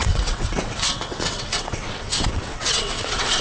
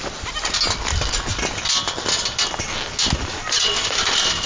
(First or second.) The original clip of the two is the second